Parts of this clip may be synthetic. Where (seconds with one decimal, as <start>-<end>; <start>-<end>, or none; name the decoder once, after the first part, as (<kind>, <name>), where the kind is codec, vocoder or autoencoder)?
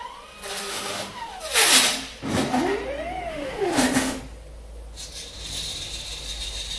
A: 0.7-1.3 (autoencoder, DAC-VAE); 3.3-4.2